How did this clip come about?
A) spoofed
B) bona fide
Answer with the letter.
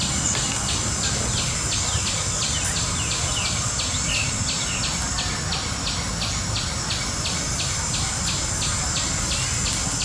B